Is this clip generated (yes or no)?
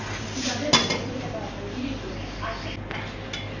no